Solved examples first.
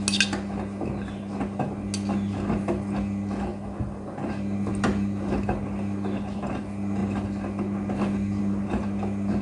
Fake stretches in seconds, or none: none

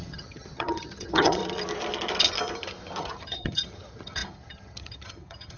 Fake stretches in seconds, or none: 0.0-1.4 (vocoder, HiFi-GAN); 3.0-5.6

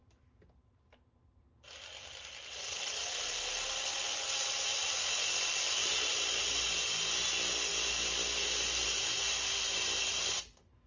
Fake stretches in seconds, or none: none

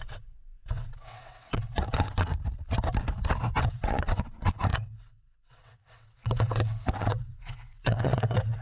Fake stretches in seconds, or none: 0.0-2.3 (vocoder, WaveNeXt); 3.6-8.6

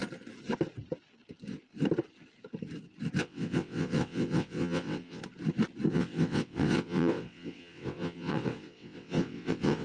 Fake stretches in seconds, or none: 3.2-5.2 (vocoder, WaveNeXt); 5.9-9.8

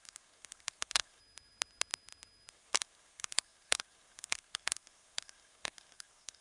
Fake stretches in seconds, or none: 0.0-1.2 (codec, SNAC); 2.5-6.4

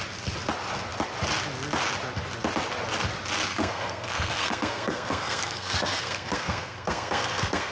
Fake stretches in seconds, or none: 3.5-7.7 (codec, SNAC)

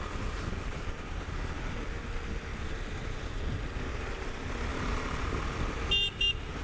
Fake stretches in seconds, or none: 2.5-3.0 (vocoder, BigVGAN v2); 4.7-5.3